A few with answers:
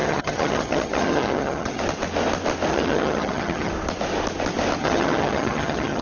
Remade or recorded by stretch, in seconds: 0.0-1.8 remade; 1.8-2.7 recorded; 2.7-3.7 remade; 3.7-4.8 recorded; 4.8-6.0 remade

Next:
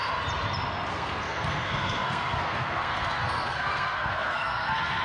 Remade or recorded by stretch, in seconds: 0.0-0.9 recorded; 0.9-5.0 remade

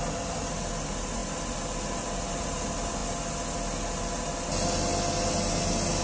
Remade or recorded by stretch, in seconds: 0.0-6.0 recorded

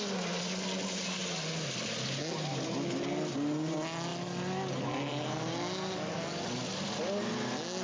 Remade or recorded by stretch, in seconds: 0.0-7.8 recorded

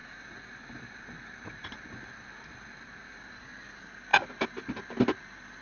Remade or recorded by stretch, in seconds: 0.0-5.6 recorded